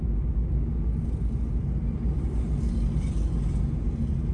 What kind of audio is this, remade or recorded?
recorded